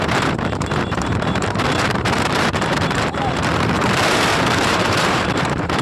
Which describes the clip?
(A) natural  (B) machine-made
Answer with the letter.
B